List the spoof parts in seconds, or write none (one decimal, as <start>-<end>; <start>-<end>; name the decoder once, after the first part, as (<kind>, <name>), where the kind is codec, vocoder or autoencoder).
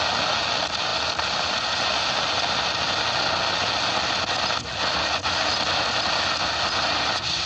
none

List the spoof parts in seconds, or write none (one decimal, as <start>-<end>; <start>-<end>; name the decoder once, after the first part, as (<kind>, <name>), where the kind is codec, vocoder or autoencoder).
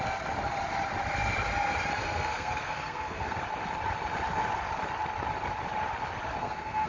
2.0-3.4 (codec, SNAC); 6.4-6.9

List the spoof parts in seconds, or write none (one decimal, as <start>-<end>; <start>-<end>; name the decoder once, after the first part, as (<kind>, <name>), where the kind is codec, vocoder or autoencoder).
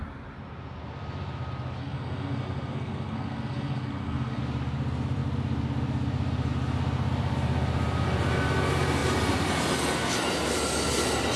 1.8-4.4 (codec, SNAC)